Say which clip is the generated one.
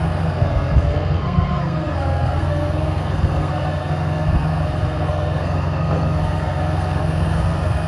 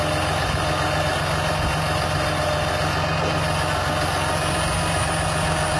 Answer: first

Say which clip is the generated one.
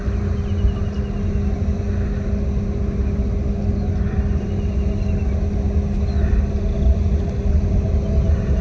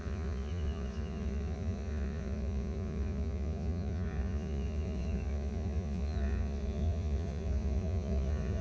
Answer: second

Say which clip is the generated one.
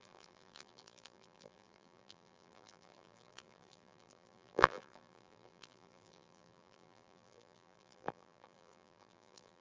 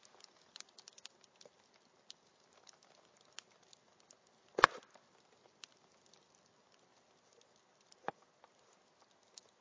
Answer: first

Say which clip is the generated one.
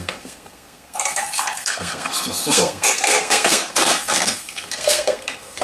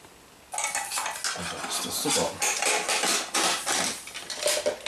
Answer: first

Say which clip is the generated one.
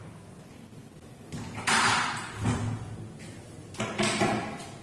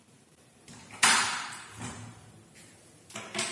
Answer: second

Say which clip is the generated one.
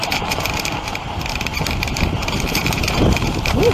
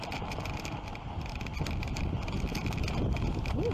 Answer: first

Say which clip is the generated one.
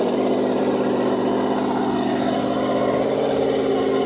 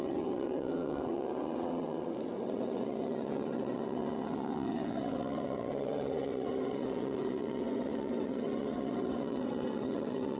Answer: second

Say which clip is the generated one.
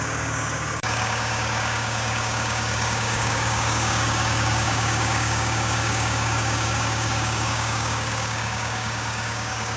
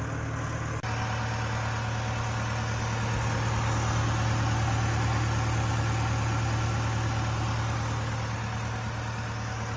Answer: first